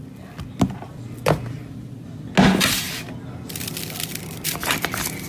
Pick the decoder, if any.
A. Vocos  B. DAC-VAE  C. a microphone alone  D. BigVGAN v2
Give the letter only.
C